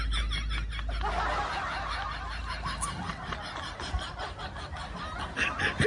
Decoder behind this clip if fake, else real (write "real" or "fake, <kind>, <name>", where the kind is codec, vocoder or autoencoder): real